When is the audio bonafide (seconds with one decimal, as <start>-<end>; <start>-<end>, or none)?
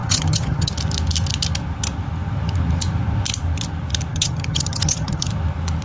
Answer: 0.7-4.1; 5.3-5.8